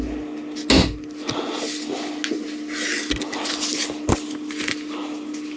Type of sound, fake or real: real